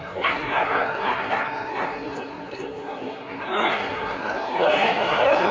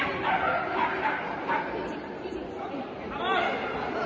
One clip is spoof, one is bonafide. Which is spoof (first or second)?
first